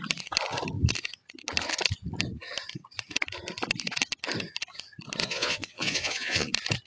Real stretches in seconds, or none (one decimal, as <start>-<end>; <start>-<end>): 0.0-5.2; 6.5-6.9